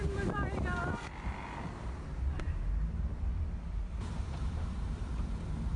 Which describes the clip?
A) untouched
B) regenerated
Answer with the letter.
B